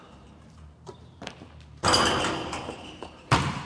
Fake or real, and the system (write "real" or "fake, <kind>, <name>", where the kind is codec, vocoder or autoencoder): fake, vocoder, BigVGAN v2